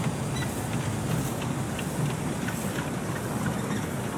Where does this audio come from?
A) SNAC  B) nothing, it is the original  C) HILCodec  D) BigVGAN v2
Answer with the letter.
B